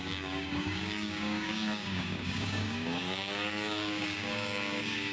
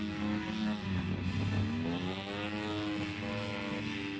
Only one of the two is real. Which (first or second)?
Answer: second